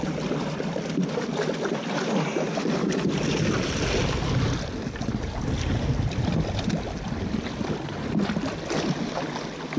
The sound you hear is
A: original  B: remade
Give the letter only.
A